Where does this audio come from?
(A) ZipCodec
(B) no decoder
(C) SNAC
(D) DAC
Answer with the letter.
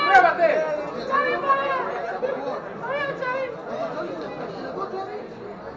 B